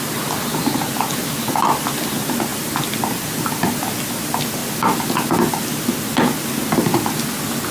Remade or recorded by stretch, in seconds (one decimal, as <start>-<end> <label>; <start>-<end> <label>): 0.0-7.7 recorded